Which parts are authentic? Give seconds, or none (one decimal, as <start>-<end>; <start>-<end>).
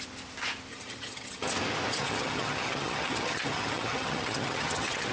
0.0-0.7; 1.5-2.0